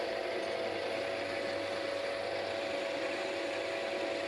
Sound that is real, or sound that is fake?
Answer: real